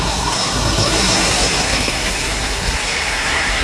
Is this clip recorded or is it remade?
remade